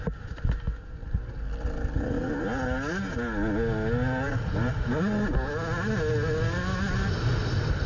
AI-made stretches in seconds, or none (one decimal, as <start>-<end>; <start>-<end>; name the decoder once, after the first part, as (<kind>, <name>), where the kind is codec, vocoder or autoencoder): none